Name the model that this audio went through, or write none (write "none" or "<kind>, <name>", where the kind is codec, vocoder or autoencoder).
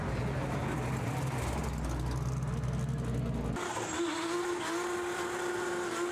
none